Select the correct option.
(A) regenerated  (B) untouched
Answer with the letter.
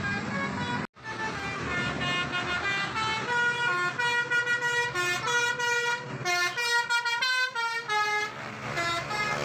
B